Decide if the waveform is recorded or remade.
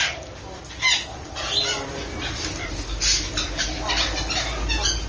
recorded